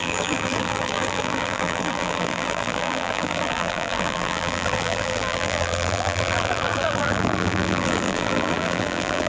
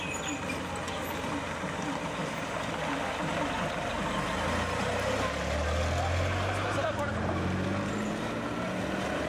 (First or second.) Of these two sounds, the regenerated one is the first